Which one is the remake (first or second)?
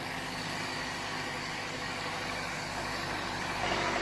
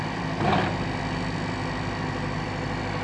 first